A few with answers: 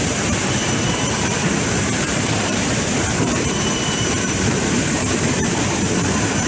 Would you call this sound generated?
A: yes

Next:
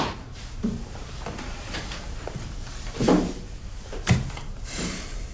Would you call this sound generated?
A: yes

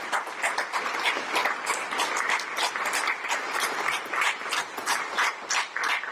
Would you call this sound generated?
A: no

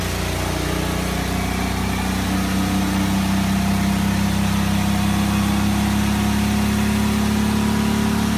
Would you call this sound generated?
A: no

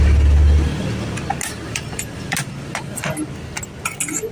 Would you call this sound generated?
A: no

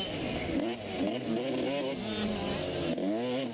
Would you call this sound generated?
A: no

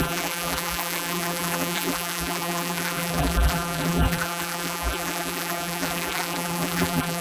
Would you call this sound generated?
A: yes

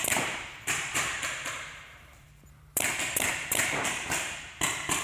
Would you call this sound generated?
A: yes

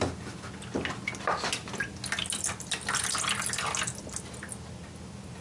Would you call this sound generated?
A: no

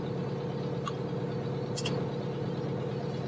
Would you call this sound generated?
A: no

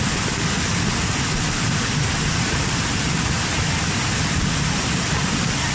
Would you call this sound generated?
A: yes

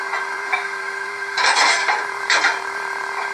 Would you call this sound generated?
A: yes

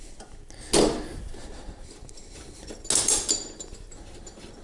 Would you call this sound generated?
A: no